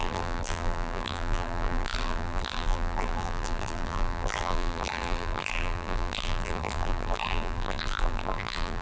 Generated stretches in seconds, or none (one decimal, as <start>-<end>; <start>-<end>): 0.0-8.8